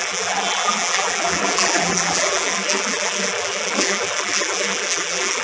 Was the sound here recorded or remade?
remade